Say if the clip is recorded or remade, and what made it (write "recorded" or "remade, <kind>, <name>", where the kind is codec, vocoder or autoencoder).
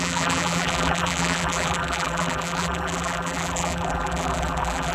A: remade, vocoder, BigVGAN v2